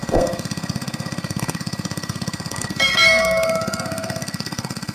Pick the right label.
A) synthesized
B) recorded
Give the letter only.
A